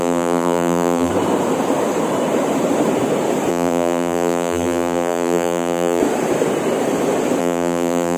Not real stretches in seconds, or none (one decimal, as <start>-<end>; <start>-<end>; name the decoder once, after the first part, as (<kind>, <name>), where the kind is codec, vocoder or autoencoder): 0.0-1.1 (vocoder, BigVGAN v2); 3.5-6.0; 7.4-8.2